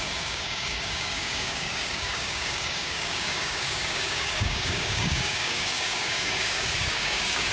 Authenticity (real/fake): fake